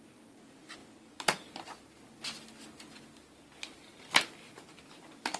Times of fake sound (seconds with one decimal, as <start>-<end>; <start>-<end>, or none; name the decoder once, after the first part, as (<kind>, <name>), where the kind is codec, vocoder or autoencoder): none